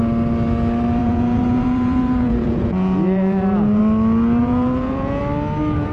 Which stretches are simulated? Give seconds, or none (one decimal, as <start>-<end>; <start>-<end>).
1.0-3.8; 4.4-5.2